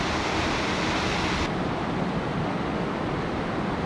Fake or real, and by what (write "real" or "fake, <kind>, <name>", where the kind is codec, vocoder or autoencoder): real